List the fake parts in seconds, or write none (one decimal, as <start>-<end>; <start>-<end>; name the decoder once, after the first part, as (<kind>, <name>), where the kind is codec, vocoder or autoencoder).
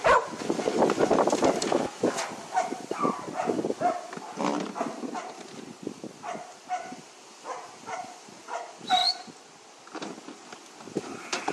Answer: 0.0-9.0 (vocoder, BigVGAN v2)